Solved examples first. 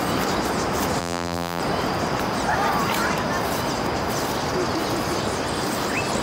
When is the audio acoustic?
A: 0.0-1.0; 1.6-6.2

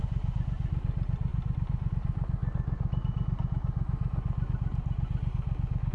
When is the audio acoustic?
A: 2.4-5.9